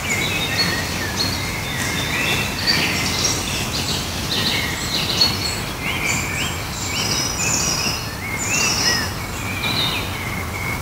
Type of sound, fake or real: real